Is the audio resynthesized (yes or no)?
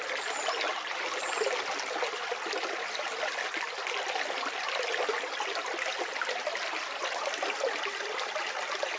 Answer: no